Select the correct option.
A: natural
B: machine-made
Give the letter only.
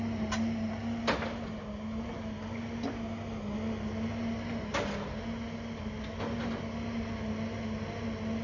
A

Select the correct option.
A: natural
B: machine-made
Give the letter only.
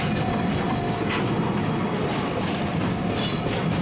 A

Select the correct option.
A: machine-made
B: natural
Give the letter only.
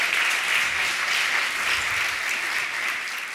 B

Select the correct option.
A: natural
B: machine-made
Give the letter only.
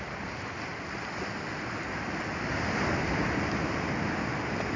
A